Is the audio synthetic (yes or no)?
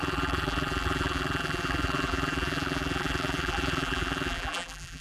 yes